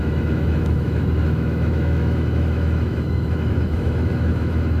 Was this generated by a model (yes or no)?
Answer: yes